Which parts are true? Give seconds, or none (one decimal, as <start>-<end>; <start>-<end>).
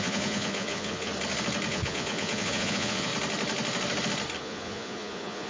1.1-1.7; 3.1-4.4